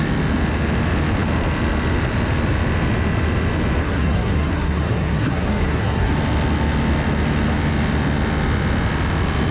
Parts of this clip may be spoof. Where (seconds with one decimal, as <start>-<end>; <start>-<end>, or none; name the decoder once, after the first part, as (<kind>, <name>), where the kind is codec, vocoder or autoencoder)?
3.8-6.1 (codec, SNAC)